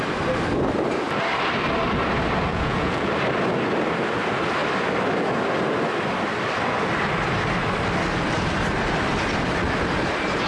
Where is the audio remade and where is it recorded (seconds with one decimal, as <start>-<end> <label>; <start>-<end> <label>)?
0.0-2.5 recorded; 2.5-3.1 remade; 3.1-10.5 recorded